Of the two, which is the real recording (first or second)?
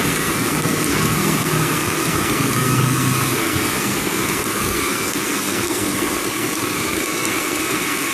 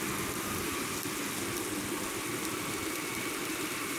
second